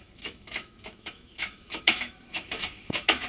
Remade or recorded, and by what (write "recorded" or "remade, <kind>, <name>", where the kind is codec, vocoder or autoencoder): remade, autoencoder, DAC-VAE